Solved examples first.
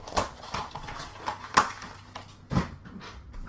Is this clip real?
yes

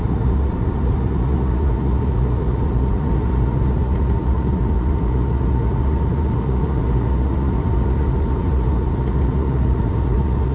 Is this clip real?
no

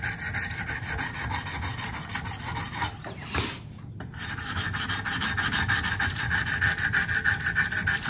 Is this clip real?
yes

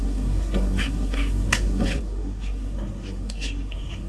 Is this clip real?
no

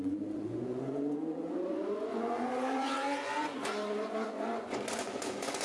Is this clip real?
no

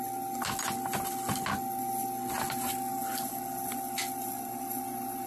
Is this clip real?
yes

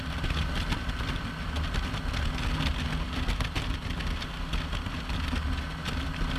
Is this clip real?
yes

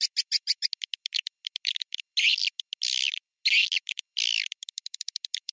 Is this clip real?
yes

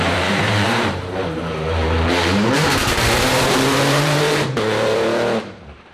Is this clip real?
no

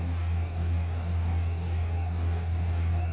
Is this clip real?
no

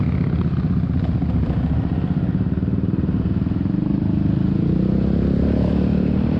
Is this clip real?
yes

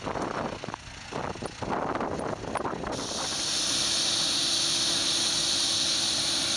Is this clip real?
yes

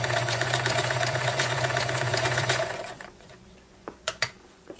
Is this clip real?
no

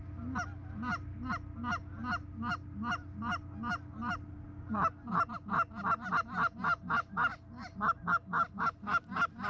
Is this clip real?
yes